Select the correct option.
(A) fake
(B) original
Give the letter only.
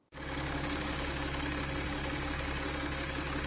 A